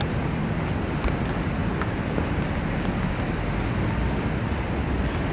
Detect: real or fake real